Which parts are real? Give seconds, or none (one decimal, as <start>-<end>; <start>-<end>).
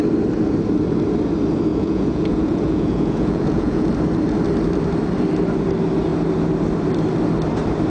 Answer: 0.0-1.7; 3.9-7.9